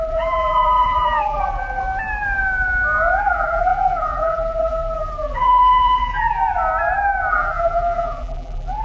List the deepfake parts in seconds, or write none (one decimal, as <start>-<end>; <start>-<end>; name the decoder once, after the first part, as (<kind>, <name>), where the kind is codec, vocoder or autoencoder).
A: 0.0-1.8 (vocoder, BigVGAN v2); 3.2-6.4; 7.3-8.8